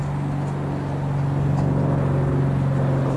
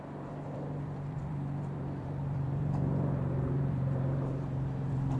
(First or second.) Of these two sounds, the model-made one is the second